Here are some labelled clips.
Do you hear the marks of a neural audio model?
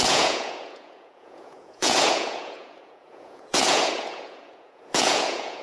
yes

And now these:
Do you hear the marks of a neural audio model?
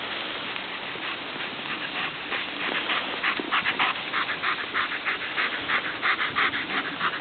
no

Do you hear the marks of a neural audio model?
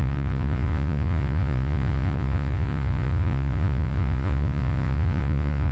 yes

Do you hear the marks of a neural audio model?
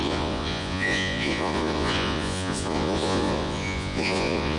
yes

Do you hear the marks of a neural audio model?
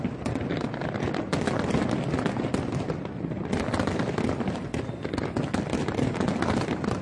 no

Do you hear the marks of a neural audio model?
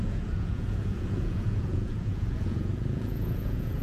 yes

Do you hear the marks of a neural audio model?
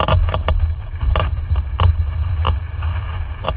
no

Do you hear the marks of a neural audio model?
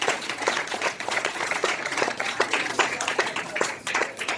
yes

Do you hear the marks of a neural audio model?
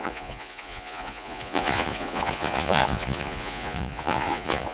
yes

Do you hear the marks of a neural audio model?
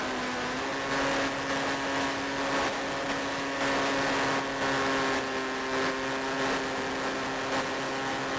no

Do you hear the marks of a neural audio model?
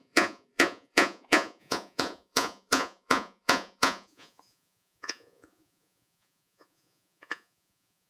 yes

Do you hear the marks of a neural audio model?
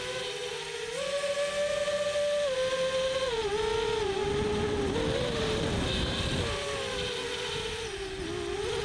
no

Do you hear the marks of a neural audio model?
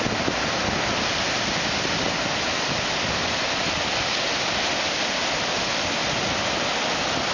no